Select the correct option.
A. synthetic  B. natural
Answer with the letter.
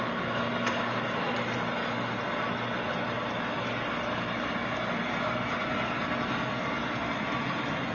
B